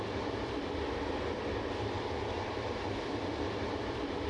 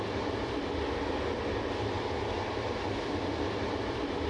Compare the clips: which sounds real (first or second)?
second